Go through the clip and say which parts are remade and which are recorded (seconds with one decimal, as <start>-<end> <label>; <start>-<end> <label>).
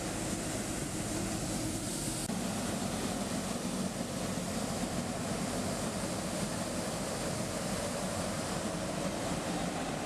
0.0-2.2 remade; 2.2-6.4 recorded; 6.4-10.1 remade